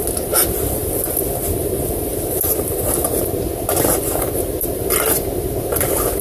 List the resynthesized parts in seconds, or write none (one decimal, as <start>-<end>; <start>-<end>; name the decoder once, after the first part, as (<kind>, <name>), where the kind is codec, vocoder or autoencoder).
none